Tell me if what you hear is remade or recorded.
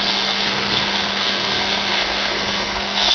remade